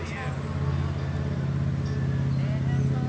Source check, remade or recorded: recorded